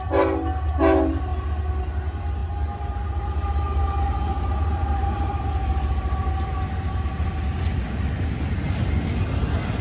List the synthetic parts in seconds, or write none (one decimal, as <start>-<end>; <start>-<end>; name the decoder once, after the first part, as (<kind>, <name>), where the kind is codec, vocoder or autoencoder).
none